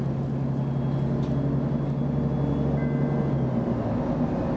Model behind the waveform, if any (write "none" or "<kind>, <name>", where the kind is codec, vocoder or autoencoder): none